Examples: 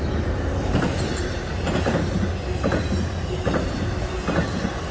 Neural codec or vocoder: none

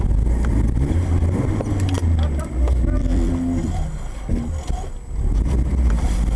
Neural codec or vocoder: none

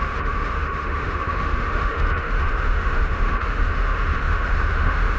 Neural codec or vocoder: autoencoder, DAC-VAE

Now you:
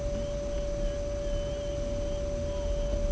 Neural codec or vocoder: none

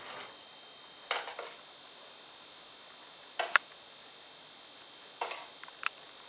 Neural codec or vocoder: none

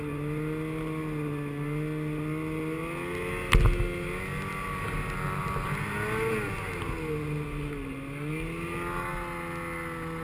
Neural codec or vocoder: none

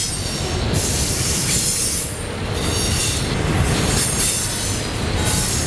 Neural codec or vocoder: none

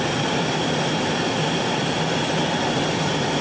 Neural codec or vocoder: none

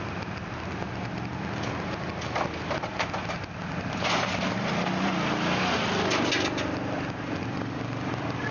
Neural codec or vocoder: none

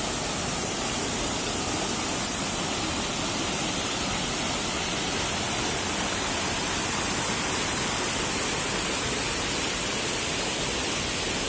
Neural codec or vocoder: none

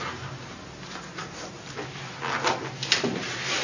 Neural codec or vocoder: none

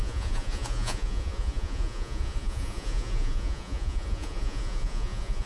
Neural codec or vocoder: vocoder, Vocos